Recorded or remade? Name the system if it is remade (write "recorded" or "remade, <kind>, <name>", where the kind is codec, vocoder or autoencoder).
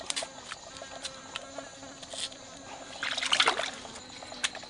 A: recorded